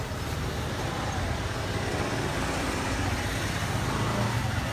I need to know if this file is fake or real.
real